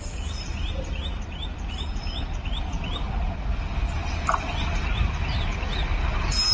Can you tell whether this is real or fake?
real